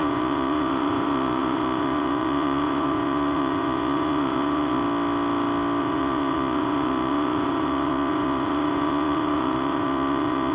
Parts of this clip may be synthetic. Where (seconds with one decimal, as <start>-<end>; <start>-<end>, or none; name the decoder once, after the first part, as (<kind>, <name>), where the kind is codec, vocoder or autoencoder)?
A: 0.0-4.8 (vocoder, Vocos); 5.8-10.5